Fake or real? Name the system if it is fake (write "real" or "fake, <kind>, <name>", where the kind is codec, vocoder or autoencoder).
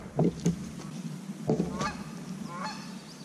real